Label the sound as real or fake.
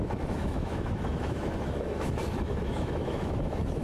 fake